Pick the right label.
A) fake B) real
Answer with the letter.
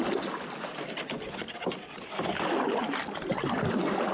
B